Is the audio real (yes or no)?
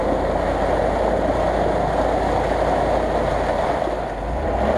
yes